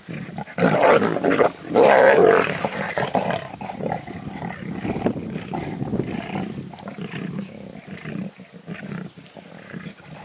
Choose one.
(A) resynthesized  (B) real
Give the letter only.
B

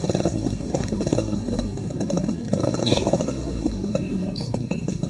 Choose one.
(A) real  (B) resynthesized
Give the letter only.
B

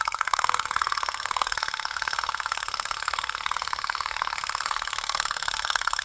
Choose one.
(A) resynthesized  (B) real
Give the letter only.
A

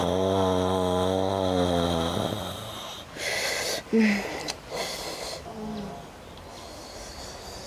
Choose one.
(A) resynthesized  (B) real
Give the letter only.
B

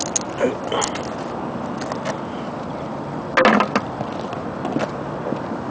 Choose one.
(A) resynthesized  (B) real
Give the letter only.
B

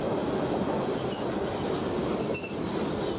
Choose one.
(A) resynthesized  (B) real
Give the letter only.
B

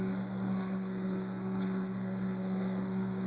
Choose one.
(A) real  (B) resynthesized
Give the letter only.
B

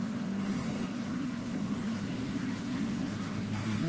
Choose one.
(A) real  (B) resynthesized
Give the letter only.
B